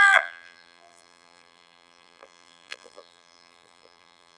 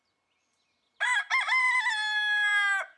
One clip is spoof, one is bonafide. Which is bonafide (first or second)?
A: second